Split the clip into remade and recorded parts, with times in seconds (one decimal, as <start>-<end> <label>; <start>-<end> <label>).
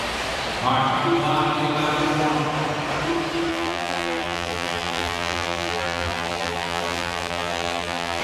0.0-3.5 recorded; 3.5-8.2 remade